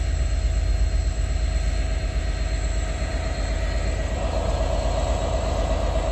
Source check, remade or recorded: recorded